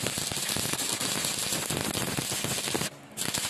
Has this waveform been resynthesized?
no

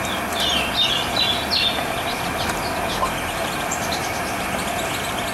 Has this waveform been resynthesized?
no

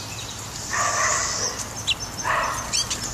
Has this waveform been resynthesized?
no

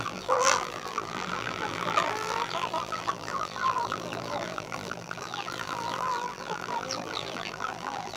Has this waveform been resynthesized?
yes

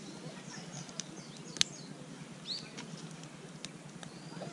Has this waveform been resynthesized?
no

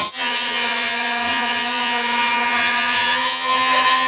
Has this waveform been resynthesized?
yes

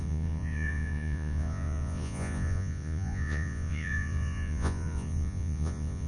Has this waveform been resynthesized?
yes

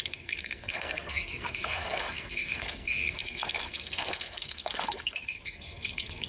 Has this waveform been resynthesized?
yes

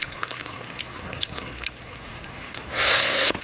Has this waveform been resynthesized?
yes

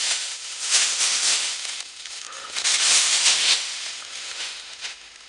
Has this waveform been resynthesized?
yes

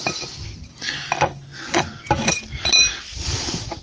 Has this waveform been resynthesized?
no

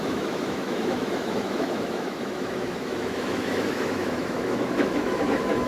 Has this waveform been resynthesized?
yes